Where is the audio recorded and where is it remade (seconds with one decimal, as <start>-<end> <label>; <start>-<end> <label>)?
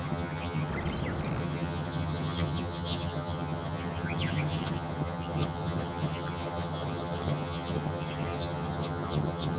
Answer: 0.0-0.7 remade; 0.7-1.4 recorded; 1.4-9.6 remade